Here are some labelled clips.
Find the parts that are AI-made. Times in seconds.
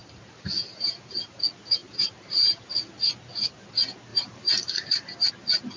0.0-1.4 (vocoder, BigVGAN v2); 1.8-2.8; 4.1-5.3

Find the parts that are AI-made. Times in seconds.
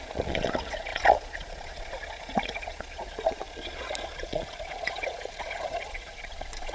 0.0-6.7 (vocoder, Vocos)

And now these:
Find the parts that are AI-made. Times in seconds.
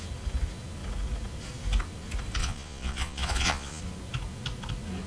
2.4-3.8 (vocoder, Vocos)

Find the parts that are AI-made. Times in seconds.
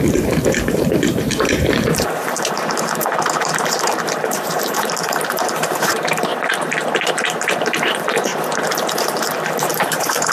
0.0-6.3 (vocoder, BigVGAN v2); 7.1-8.3; 9.3-10.3